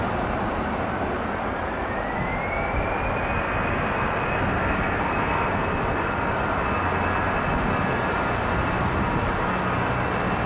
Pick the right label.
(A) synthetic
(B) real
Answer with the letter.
B